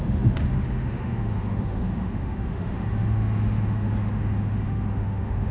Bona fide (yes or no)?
no